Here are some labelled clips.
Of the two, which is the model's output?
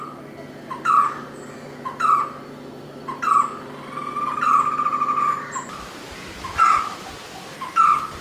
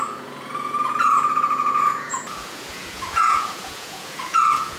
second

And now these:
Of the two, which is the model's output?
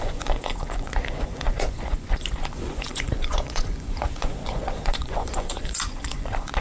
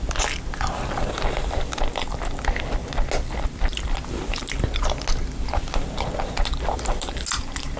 first